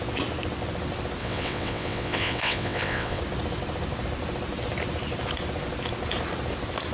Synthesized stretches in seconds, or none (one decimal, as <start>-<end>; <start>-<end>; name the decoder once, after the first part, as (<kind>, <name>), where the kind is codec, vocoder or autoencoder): 1.2-3.2 (vocoder, WaveNeXt)